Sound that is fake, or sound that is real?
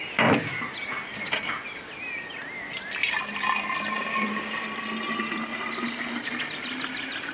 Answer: real